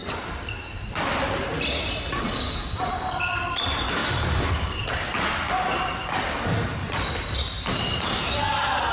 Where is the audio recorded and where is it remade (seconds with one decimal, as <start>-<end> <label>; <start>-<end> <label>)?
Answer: 0.0-4.0 recorded; 4.0-4.8 remade; 4.8-6.8 recorded; 6.8-7.7 remade; 7.7-8.9 recorded